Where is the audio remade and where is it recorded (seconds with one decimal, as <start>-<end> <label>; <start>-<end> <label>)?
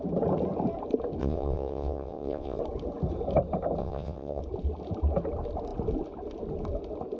0.0-1.2 recorded; 1.2-2.6 remade; 2.6-3.8 recorded; 3.8-4.4 remade; 4.4-7.2 recorded